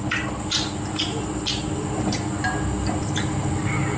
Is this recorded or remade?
recorded